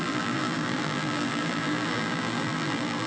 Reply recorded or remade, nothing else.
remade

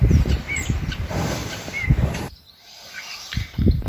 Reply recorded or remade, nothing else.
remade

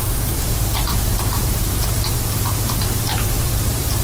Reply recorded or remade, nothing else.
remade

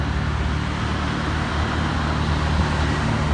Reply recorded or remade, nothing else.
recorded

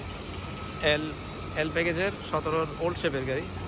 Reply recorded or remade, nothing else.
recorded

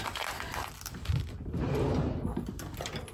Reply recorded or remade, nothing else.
remade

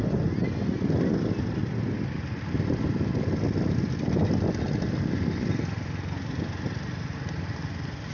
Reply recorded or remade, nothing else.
recorded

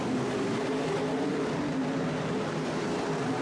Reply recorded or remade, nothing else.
remade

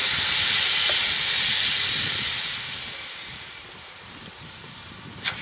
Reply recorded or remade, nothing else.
remade